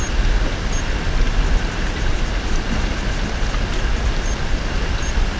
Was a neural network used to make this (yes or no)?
no